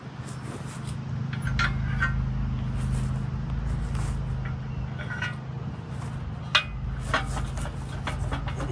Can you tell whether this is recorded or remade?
recorded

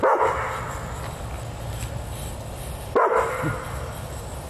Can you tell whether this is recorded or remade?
recorded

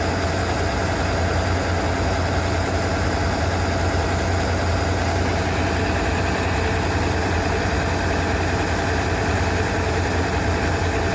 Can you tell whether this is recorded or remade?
recorded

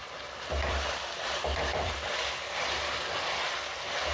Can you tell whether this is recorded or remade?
remade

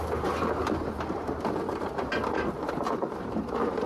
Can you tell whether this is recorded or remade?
remade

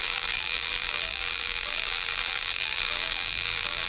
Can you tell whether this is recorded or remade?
remade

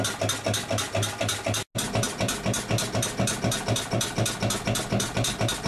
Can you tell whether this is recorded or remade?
recorded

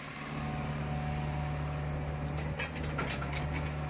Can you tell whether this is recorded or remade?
recorded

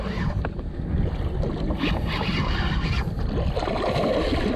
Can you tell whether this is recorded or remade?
recorded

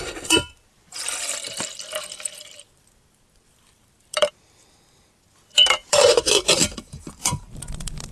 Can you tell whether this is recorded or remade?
remade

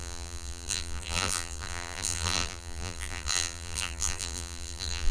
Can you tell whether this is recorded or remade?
remade